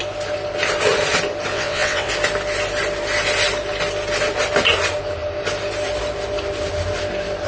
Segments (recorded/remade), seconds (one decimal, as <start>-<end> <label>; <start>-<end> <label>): 0.0-1.5 recorded; 1.5-2.1 remade; 2.1-7.5 recorded